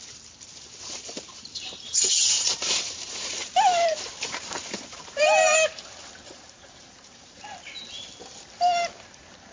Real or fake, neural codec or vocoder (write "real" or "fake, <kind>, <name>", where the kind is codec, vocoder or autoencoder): fake, vocoder, BigVGAN v2